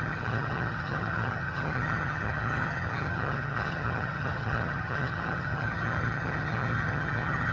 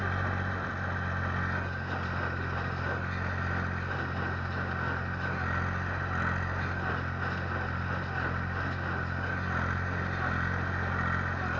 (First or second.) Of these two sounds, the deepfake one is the first